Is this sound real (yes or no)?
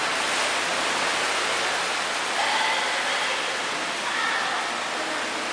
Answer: yes